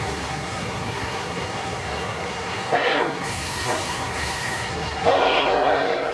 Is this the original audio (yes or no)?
no